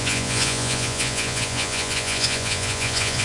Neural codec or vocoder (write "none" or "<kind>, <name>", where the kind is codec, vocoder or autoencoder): vocoder, Vocos